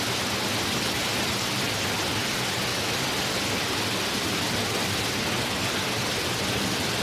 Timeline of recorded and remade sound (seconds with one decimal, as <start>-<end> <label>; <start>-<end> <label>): 0.0-7.0 recorded